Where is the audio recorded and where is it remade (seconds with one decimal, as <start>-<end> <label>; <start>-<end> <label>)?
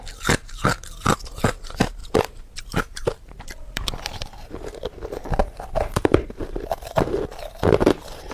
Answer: 0.0-2.0 recorded; 2.0-4.7 remade; 4.7-8.3 recorded